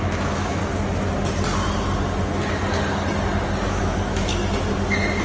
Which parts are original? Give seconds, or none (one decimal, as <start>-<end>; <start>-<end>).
0.6-3.7; 4.3-5.2